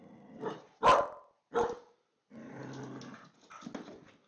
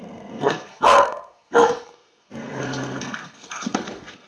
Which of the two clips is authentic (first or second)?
first